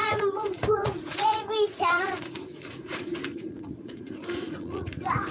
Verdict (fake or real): fake